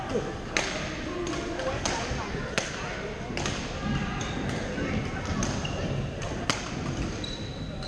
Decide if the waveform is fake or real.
real